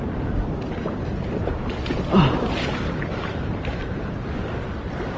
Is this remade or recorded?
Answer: recorded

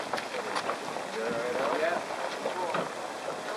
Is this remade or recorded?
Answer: recorded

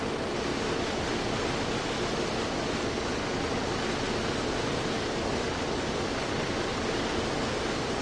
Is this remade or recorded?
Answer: recorded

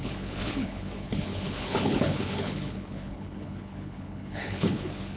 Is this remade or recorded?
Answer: remade